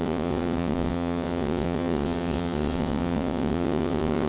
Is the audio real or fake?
fake